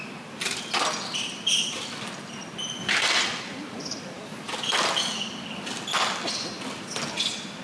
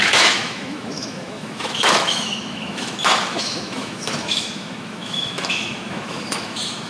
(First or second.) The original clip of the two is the first